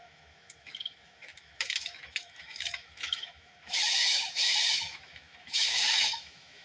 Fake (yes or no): yes